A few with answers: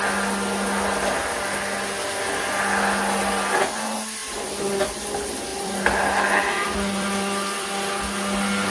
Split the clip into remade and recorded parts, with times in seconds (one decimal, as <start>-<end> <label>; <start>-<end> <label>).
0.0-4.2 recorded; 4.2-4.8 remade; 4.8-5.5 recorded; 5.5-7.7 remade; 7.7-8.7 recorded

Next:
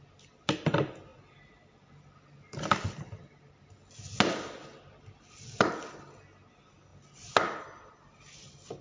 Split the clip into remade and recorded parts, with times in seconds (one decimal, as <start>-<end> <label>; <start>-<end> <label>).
0.0-1.1 recorded; 1.1-3.0 remade; 3.0-4.6 recorded; 4.6-5.7 remade; 5.7-8.8 recorded

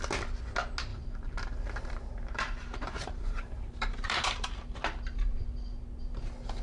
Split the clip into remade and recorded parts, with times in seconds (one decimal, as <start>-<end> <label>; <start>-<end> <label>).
0.0-0.9 recorded; 0.9-4.8 remade; 4.8-6.6 recorded

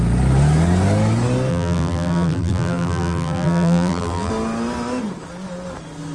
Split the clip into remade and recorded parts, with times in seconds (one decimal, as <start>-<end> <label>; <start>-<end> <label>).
0.0-1.5 recorded; 1.5-4.3 remade; 4.3-6.1 recorded

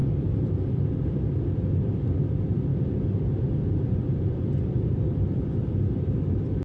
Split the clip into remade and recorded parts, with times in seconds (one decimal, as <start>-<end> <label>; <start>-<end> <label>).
0.0-2.7 remade; 2.7-3.7 recorded; 3.7-6.6 remade

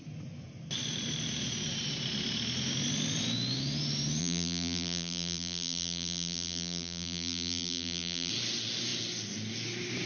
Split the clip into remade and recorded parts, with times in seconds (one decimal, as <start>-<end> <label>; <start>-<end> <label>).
0.0-4.2 recorded; 4.2-8.3 remade; 8.3-10.1 recorded

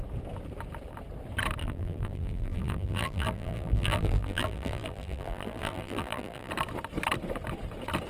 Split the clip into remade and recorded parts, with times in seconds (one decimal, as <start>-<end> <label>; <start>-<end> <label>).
0.0-1.6 recorded; 1.6-6.5 remade; 6.5-8.1 recorded

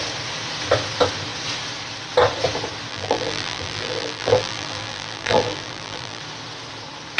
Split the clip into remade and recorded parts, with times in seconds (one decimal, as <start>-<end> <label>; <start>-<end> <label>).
0.0-2.9 recorded; 2.9-6.2 remade; 6.2-7.2 recorded